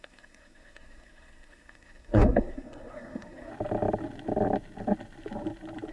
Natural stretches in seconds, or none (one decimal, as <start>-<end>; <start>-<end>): 3.5-5.9